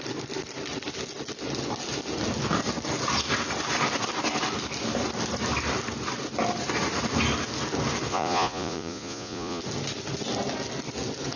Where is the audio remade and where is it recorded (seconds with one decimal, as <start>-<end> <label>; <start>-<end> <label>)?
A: 0.0-8.1 recorded; 8.1-9.6 remade; 9.6-11.4 recorded